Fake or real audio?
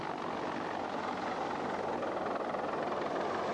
real